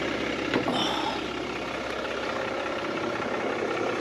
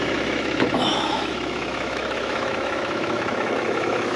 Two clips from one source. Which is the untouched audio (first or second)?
first